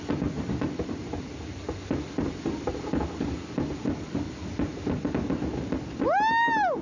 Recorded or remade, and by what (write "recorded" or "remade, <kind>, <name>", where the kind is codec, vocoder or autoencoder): recorded